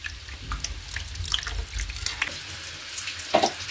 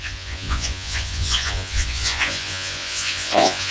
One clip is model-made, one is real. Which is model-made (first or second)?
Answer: second